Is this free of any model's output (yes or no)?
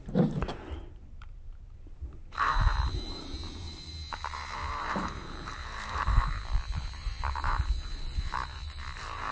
no